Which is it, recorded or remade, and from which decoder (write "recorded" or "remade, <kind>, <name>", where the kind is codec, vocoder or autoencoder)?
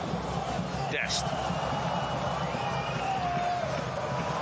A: recorded